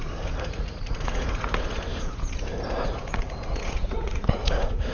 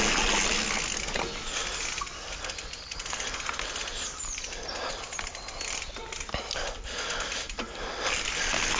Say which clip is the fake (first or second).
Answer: first